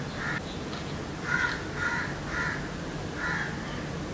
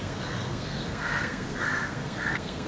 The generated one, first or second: second